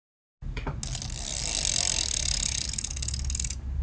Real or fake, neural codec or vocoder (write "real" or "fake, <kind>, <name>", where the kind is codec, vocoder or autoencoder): real